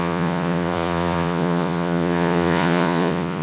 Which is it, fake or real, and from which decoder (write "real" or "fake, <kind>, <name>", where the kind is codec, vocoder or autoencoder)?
fake, vocoder, Vocos